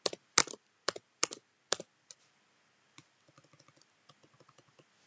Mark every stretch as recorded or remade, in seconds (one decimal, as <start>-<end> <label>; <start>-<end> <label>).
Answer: 0.0-5.1 recorded